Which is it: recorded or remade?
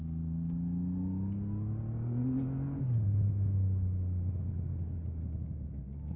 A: recorded